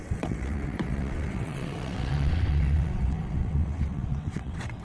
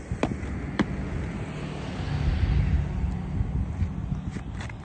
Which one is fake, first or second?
first